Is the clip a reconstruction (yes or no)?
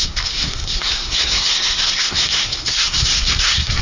yes